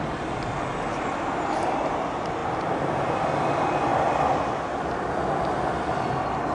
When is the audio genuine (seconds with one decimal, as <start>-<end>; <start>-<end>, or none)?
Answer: 0.0-6.5

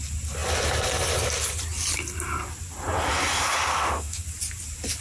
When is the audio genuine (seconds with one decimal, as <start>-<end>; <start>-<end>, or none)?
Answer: 0.0-3.7; 4.2-5.0

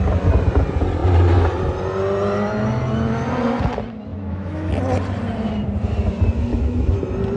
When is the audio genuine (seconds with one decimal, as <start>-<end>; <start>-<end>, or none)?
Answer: 0.0-4.1; 4.7-6.5; 7.0-7.4

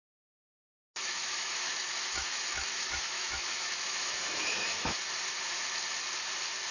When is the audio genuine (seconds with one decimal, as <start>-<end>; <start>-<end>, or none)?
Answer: 0.0-1.0; 5.0-6.7

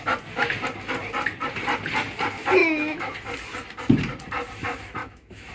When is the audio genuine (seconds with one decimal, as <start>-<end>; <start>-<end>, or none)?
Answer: 0.0-2.6; 3.1-5.0

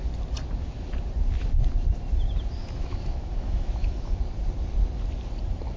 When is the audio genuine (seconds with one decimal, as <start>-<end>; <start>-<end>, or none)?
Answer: 0.0-2.6; 4.2-5.8

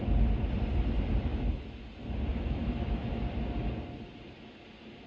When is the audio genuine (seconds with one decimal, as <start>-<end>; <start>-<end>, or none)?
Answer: 0.0-1.3; 1.8-2.3; 3.2-5.1

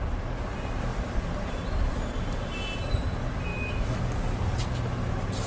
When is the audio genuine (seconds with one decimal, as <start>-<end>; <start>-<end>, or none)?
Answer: 0.0-3.5; 4.0-5.5